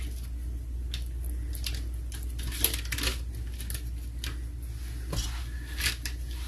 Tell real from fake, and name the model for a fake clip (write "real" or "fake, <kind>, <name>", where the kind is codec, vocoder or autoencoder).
real